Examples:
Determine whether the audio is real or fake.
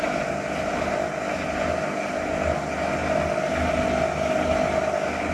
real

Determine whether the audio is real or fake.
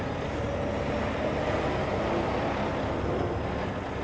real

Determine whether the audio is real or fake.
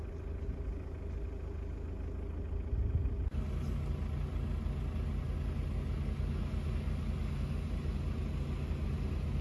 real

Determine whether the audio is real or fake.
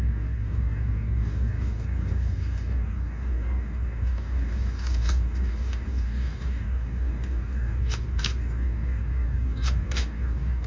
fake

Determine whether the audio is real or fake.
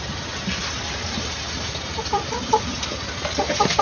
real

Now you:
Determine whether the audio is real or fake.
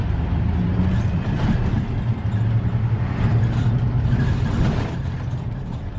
real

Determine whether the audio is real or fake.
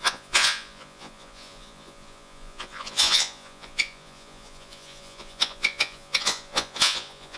fake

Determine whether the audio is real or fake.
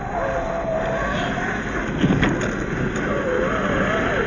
real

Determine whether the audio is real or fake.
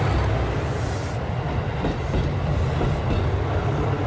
real